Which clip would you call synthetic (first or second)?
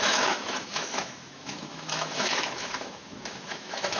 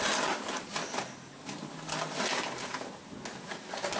first